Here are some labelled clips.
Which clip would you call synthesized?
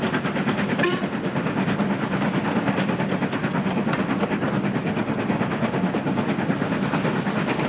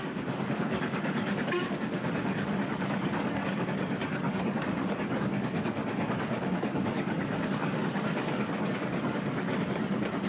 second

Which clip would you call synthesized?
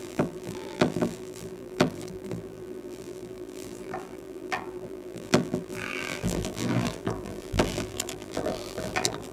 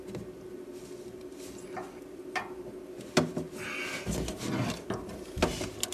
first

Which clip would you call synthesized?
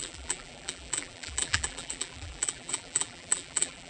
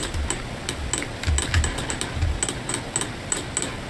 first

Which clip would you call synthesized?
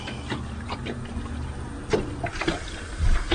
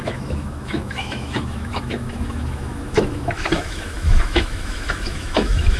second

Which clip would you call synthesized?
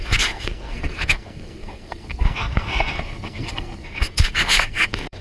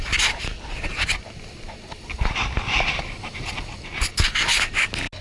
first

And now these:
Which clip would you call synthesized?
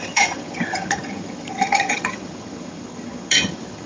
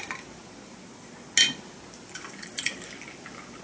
first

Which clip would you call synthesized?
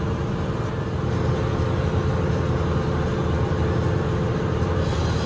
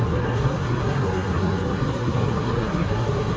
second